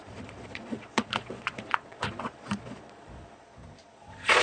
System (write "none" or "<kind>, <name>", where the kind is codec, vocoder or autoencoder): vocoder, Vocos